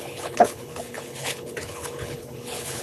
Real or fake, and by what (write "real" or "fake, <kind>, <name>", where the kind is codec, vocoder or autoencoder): fake, codec, HILCodec